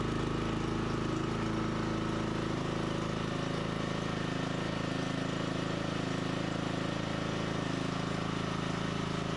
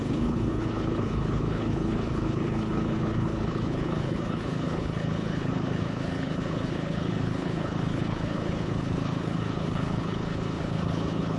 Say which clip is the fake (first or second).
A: second